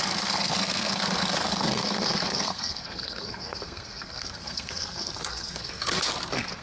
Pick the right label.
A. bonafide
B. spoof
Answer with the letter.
B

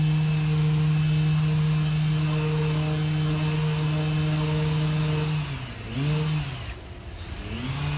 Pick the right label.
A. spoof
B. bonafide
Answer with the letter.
B